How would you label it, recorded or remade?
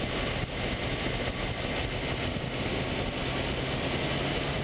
recorded